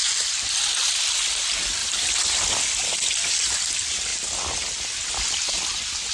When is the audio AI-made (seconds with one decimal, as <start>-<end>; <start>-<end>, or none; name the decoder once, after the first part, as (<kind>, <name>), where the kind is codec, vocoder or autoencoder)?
0.0-0.6 (vocoder, BigVGAN v2); 1.8-2.4